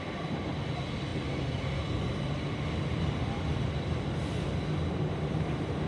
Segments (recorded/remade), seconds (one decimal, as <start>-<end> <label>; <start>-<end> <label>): 0.0-5.9 recorded